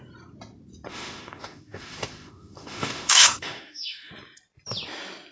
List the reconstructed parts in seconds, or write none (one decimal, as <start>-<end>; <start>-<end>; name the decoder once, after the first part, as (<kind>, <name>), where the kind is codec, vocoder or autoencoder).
0.9-4.1 (autoencoder, DAC-VAE)